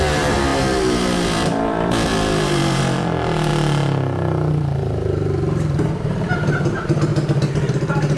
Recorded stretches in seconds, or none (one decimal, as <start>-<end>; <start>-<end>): 3.5-4.5; 7.1-7.7